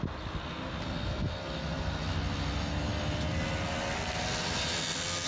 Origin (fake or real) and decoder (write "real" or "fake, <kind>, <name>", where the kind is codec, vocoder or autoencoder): real